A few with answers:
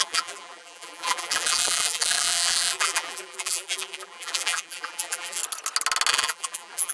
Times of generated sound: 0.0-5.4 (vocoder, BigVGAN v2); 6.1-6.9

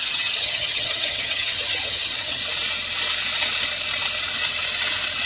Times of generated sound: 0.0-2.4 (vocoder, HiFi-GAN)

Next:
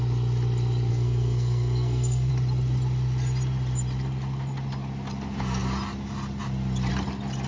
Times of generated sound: 0.9-2.3 (codec, SNAC)

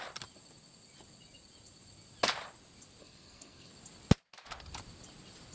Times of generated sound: 3.0-3.7 (codec, SNAC)

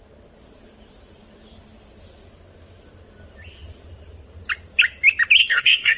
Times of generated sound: 5.4-6.0 (codec, SNAC)

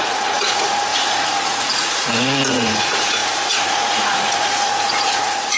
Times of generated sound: 0.0-5.6 (vocoder, Vocos)

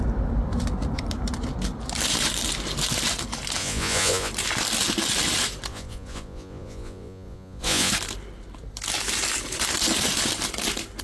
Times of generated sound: 3.6-4.3 (vocoder, Vocos); 5.7-7.9

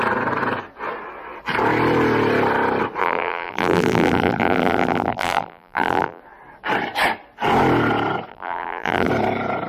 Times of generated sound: 3.0-6.2 (vocoder, BigVGAN v2); 8.3-9.1